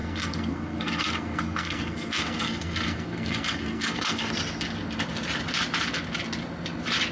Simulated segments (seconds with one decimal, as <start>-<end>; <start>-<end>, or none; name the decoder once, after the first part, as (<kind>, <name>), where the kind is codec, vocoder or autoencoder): 0.0-4.3 (codec, SNAC)